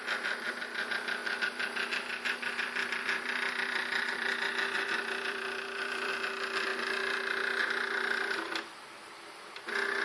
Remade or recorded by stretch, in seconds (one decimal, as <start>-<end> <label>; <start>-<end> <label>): 0.0-1.2 recorded; 1.2-6.1 remade; 6.1-10.0 recorded